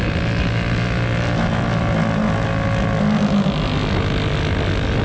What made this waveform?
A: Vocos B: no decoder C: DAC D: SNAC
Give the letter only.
B